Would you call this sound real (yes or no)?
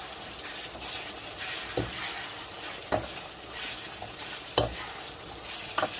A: yes